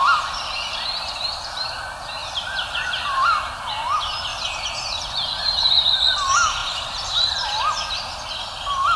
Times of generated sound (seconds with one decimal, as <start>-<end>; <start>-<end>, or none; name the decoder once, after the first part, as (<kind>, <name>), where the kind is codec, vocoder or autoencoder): 2.2-3.5 (vocoder, BigVGAN v2); 4.3-5.7; 6.6-7.6